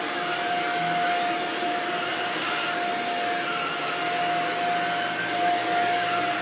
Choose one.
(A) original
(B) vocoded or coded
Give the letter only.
A